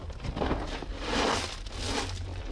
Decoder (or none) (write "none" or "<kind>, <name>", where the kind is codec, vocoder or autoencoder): none